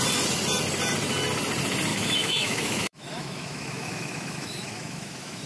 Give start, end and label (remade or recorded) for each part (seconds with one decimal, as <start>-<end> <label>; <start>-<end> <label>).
0.0-1.9 recorded; 1.9-5.5 remade